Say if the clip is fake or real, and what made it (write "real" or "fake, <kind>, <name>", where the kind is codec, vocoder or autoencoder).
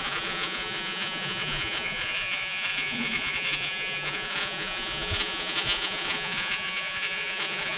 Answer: fake, vocoder, Vocos